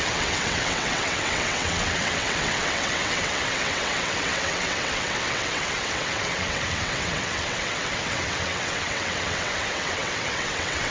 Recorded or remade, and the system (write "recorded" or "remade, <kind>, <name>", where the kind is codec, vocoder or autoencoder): remade, vocoder, WaveNeXt